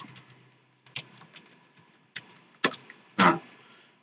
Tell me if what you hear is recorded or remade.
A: recorded